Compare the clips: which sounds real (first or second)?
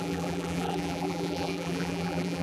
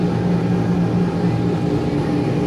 second